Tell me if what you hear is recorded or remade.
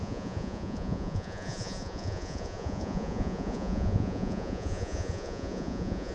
remade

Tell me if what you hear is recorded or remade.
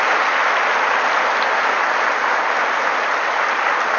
recorded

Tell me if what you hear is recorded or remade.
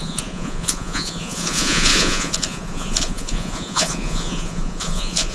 remade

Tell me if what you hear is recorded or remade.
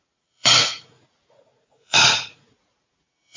remade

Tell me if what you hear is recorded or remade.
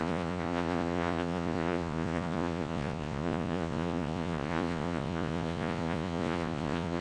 remade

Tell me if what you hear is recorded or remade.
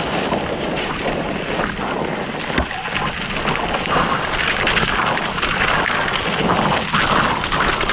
recorded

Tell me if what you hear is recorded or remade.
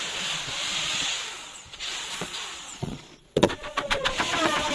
remade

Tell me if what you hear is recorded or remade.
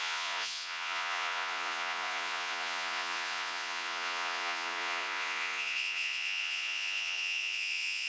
remade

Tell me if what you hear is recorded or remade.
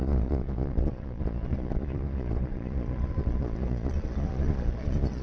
remade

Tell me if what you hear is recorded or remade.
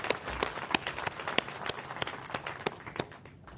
recorded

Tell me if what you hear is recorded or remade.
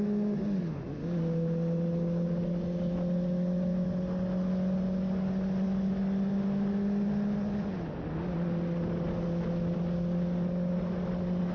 recorded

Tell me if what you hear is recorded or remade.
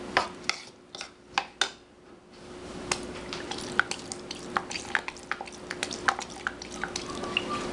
recorded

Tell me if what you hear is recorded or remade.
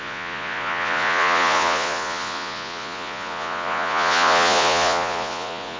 remade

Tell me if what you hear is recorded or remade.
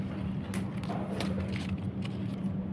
recorded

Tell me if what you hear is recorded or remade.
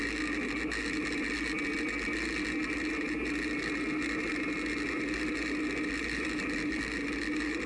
recorded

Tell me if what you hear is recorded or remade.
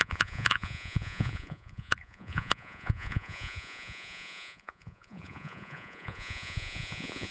remade